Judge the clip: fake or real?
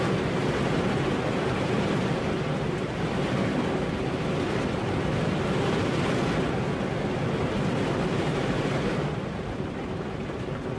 real